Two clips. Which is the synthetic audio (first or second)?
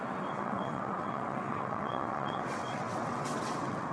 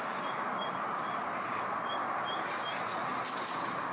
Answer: first